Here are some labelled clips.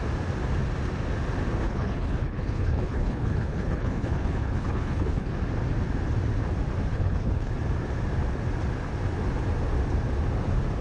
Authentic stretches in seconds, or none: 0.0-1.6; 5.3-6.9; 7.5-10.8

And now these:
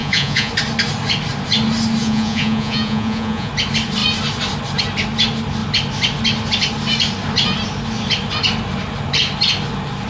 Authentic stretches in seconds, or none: 0.5-2.0; 3.5-10.1

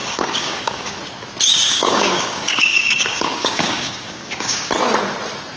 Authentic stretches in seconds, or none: 1.0-1.5; 4.7-5.6

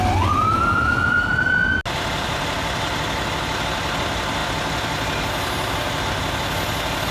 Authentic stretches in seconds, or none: 0.0-7.1

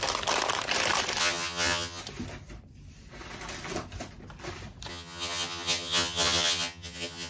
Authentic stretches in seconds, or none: 0.0-1.2; 2.0-4.9

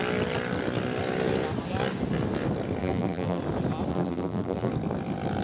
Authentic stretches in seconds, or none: 0.0-2.8; 3.4-3.9; 4.7-5.4

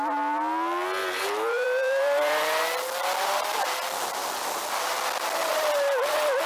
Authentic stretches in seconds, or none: 0.0-1.0; 2.6-5.5

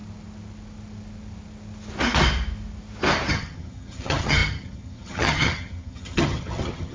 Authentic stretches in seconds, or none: 0.0-3.3